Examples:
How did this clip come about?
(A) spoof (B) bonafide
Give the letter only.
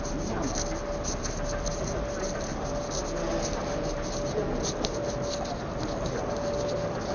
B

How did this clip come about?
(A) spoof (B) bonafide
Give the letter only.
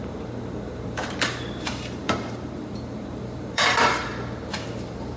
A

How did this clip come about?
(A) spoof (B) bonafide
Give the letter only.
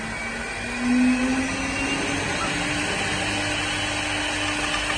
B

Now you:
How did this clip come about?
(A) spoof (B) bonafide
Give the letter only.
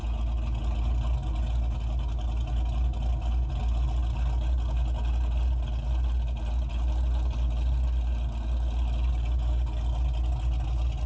B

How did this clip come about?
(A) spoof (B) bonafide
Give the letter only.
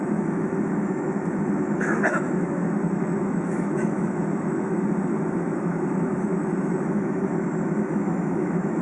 A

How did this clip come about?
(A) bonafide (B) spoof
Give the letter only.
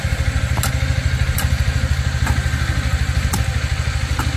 A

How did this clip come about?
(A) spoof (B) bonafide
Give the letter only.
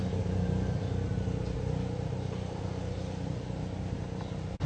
B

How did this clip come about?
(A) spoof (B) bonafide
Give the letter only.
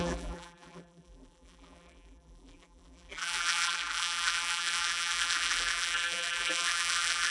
A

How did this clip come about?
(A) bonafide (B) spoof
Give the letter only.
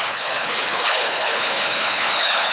B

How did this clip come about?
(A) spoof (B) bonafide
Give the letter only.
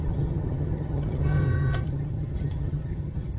A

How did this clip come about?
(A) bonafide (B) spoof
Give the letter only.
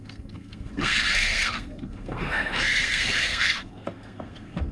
B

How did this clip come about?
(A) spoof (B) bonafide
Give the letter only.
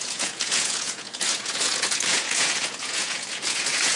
A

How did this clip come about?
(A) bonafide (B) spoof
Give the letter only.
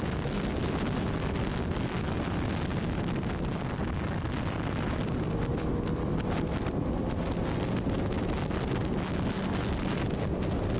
A